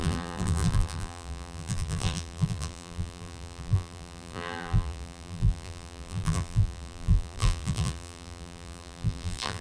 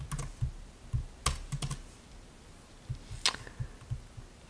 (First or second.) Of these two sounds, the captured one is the second